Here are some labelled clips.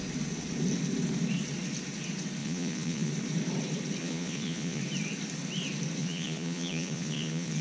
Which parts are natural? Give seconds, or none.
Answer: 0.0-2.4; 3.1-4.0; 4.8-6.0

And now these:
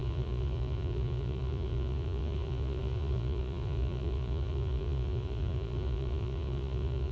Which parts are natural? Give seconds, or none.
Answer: none

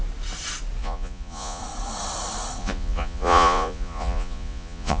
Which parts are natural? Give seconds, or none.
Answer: 0.0-0.8; 1.6-2.6

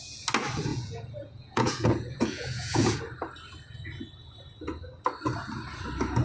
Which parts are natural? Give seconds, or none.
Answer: 0.0-0.7; 3.0-6.2

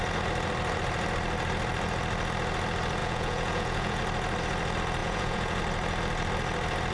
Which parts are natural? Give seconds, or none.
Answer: 0.0-3.0; 4.0-5.0; 5.6-6.9

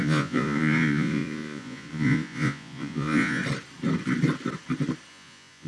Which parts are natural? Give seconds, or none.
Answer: 3.4-5.1

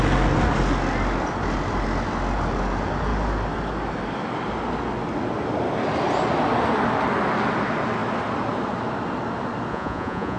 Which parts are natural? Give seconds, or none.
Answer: 0.0-9.7

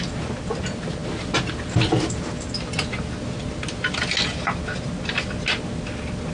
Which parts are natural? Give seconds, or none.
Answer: 0.0-6.3